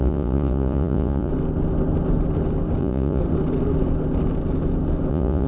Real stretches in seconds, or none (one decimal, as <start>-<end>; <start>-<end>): 1.3-2.8; 3.2-5.1